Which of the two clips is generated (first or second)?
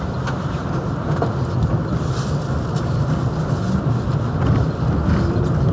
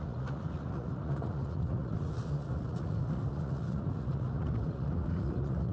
second